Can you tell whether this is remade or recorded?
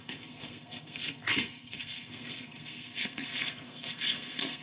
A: remade